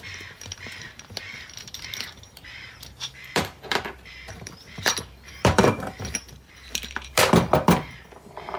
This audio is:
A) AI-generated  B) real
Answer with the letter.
A